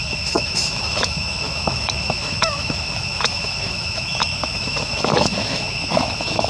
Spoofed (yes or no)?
yes